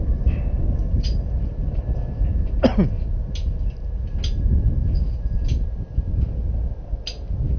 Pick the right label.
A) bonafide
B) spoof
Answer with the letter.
A